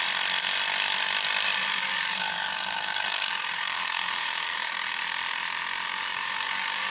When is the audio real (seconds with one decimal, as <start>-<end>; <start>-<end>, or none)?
0.0-1.7; 5.0-6.1